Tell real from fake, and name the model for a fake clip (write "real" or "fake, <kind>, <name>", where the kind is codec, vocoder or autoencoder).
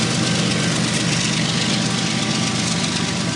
real